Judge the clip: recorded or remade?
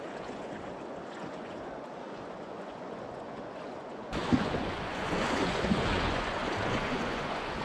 remade